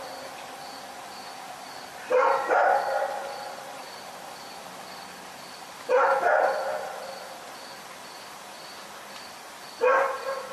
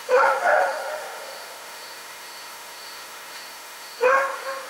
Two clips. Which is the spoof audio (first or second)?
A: second